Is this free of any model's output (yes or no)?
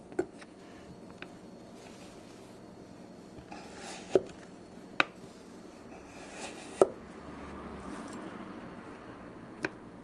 yes